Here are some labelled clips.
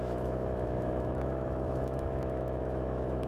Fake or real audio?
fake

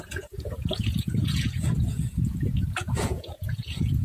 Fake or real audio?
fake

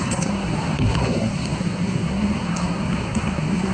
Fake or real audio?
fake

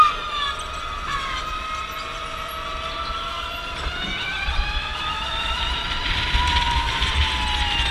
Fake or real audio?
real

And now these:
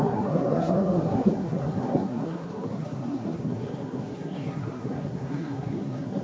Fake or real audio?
fake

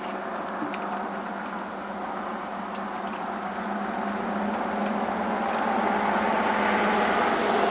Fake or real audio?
real